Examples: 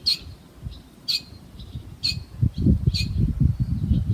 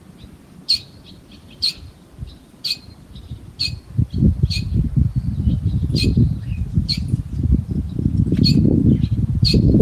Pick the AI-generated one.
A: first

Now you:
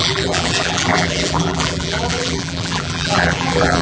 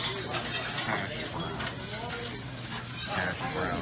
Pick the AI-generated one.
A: first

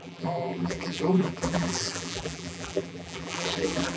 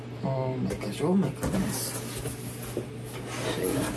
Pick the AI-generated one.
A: first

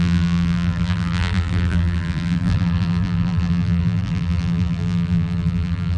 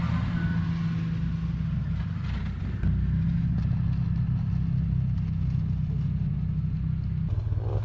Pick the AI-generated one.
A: first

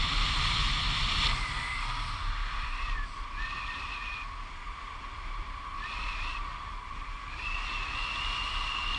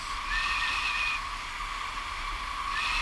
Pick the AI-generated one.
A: first